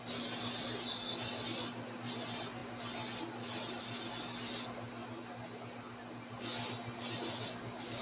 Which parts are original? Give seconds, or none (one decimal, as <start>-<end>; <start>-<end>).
0.0-8.0